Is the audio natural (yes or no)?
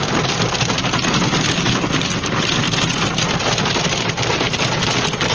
yes